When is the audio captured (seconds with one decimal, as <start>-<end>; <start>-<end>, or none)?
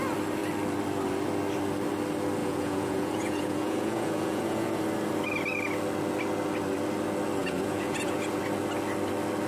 0.0-2.4; 4.8-7.4; 8.4-9.5